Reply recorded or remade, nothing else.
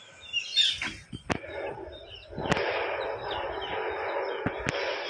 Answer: recorded